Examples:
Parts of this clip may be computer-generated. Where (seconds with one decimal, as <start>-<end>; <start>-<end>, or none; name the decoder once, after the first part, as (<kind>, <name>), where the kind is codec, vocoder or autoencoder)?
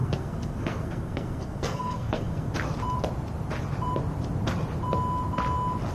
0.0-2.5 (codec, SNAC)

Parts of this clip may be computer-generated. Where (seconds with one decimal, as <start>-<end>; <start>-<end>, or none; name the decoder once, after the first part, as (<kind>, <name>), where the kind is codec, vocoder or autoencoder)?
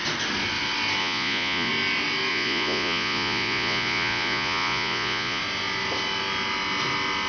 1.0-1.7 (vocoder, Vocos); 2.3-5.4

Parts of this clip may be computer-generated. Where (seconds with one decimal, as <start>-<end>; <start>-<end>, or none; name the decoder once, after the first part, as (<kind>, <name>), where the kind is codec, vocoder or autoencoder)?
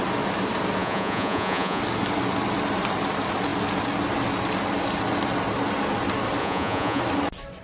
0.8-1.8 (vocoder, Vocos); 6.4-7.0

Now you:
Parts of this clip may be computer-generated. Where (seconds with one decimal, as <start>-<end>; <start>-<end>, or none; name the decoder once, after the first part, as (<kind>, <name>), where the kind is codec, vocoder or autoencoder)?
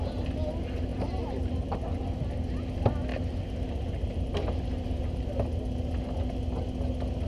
0.9-2.2 (vocoder, BigVGAN v2); 3.1-5.3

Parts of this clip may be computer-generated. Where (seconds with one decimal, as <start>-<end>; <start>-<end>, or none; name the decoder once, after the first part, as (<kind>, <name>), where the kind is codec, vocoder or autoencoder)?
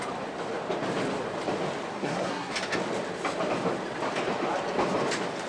1.9-2.5 (codec, SNAC)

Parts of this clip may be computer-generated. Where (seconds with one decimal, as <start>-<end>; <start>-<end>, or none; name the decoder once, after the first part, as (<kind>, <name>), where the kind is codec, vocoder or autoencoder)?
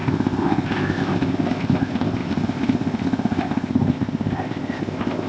0.0-5.3 (codec, ZipCodec)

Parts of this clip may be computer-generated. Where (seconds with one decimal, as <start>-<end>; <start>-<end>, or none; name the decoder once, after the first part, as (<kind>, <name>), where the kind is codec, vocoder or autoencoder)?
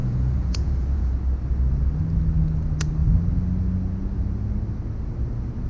0.0-1.1 (vocoder, Vocos)